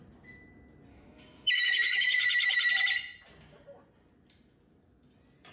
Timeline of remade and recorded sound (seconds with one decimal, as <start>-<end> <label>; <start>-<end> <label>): 0.0-0.9 recorded; 0.9-2.7 remade; 2.7-5.5 recorded

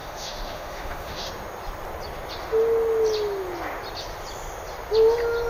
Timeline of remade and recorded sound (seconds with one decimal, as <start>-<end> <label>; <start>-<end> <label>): 0.0-1.3 remade; 1.3-5.5 recorded